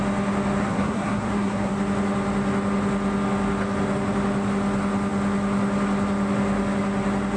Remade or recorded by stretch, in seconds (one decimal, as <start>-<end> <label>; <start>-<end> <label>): 0.0-0.6 recorded; 0.6-1.7 remade; 1.7-7.4 recorded